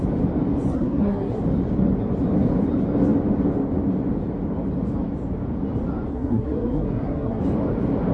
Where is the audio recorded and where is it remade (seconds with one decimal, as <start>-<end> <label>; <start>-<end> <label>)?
0.0-0.7 recorded; 0.7-1.4 remade; 1.4-6.1 recorded; 6.1-7.4 remade; 7.4-8.1 recorded